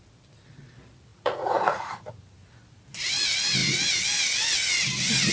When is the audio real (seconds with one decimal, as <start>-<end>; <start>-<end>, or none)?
0.0-1.1; 2.1-5.3